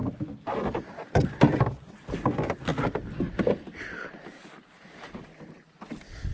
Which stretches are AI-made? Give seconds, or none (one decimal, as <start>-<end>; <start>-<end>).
none